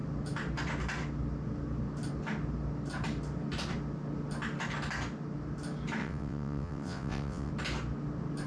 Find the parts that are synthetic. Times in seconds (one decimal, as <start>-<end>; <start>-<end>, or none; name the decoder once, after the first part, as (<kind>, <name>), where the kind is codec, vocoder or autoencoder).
6.0-7.5 (vocoder, WaveNeXt)